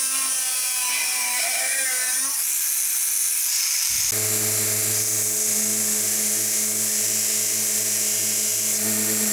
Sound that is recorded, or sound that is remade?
recorded